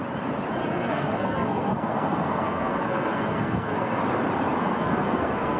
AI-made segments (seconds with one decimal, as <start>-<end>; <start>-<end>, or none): 0.6-4.0; 4.6-5.6